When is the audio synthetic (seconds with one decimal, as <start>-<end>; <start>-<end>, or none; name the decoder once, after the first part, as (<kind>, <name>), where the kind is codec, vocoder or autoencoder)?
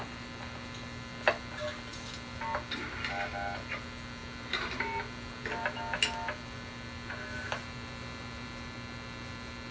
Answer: none